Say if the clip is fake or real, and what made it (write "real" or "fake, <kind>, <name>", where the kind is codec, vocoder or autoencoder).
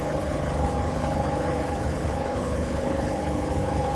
fake, codec, HILCodec